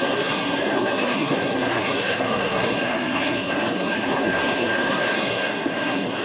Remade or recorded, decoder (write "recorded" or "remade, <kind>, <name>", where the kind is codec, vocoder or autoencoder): remade, codec, SNAC